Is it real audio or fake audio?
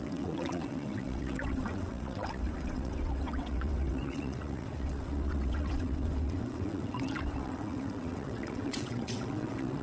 fake